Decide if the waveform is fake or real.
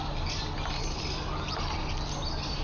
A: real